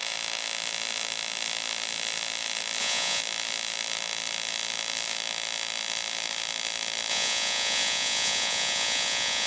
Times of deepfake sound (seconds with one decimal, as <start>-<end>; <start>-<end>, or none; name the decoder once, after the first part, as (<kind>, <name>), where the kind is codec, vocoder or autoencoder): 2.8-3.2 (vocoder, Vocos); 7.1-9.5